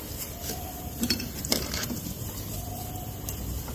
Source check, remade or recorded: remade